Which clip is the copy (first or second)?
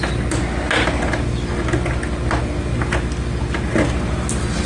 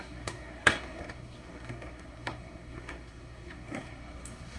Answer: second